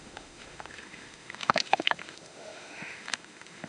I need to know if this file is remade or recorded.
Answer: remade